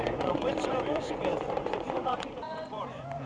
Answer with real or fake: fake